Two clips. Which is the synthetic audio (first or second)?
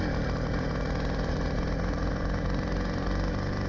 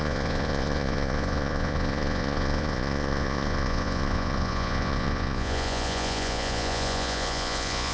second